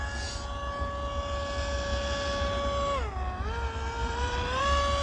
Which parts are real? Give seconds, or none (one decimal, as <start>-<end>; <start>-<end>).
0.0-4.0; 4.6-5.0